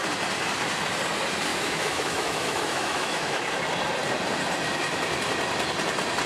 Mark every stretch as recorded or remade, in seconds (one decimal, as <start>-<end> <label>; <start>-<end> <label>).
0.0-1.5 recorded; 1.5-3.5 remade; 3.5-6.3 recorded